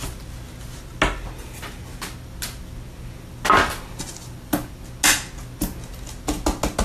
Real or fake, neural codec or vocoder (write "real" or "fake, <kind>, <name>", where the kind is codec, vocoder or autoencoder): real